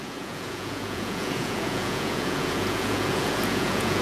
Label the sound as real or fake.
fake